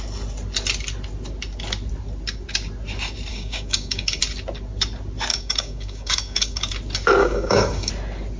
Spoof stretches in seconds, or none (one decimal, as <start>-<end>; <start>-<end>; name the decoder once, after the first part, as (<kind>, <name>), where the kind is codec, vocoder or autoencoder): 3.3-4.2 (codec, DAC); 5.3-6.7; 7.2-7.9